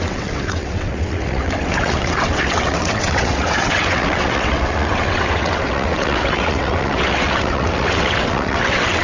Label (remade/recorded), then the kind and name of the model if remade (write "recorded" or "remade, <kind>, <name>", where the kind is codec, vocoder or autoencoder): remade, vocoder, WaveNeXt